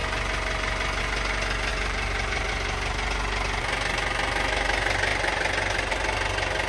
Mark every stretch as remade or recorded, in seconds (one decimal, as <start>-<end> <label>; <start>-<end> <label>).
0.0-1.7 recorded; 1.7-2.5 remade; 2.5-6.7 recorded